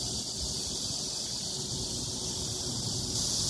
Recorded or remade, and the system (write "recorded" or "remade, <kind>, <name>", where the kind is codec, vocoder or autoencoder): recorded